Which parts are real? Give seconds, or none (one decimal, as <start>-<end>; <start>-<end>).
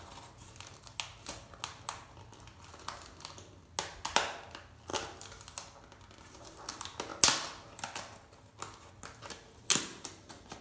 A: 0.0-10.6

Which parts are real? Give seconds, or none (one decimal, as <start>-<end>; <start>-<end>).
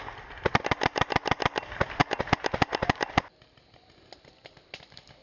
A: 0.0-5.2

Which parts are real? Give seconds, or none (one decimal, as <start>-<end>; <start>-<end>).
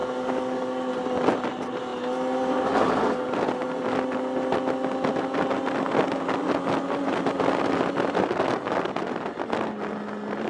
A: 0.9-10.5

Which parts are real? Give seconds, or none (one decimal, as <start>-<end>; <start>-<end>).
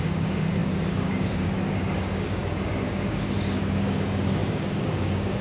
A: none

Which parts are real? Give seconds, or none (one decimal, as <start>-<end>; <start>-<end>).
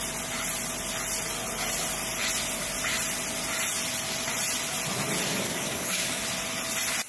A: 0.0-5.3; 6.2-7.1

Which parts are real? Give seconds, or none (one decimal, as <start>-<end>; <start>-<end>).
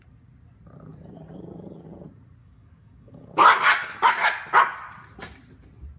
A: 0.0-2.4; 4.1-6.0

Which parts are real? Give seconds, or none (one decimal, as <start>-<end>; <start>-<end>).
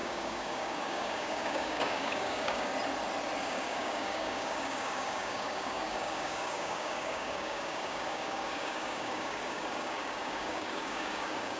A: 2.7-3.4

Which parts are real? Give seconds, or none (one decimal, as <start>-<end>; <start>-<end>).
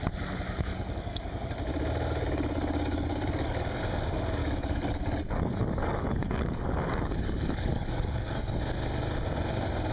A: 0.0-0.7; 1.5-2.2; 3.8-4.4; 8.6-9.9